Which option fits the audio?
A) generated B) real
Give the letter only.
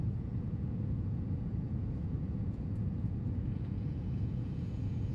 A